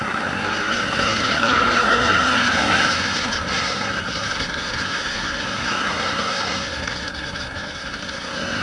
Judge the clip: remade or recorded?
remade